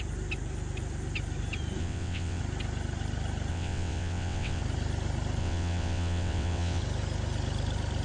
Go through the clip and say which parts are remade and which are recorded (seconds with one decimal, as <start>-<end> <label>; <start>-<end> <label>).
0.0-1.8 recorded; 1.8-2.4 remade; 2.4-3.5 recorded; 3.5-4.6 remade; 4.6-5.4 recorded; 5.4-6.8 remade; 6.8-8.0 recorded